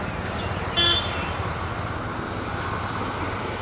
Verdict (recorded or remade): recorded